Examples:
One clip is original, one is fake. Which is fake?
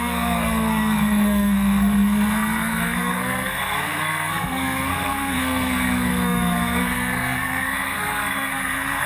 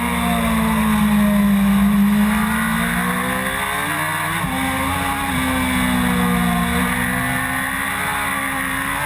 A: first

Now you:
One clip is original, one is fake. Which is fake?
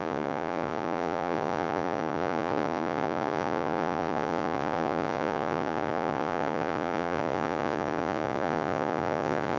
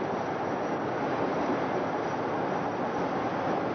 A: first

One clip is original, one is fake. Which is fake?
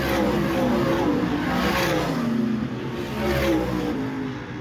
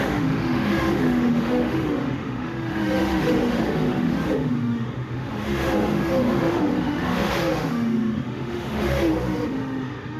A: second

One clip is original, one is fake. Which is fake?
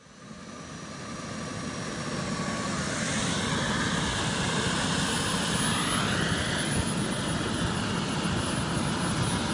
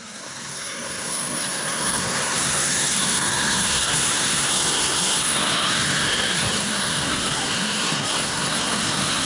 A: second